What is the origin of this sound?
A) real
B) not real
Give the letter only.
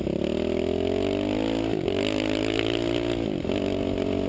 A